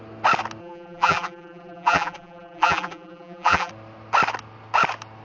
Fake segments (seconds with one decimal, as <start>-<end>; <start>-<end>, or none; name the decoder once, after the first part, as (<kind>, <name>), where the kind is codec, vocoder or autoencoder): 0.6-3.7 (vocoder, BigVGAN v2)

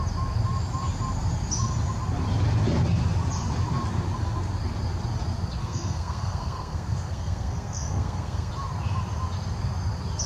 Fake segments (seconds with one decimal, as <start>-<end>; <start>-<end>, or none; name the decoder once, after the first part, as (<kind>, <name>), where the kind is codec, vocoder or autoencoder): 5.6-8.5 (codec, SNAC)

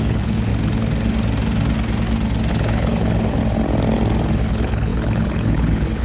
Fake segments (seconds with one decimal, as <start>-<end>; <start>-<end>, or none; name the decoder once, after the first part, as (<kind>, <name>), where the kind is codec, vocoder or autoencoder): 0.0-0.5 (codec, HILCodec); 2.5-3.4; 4.4-6.0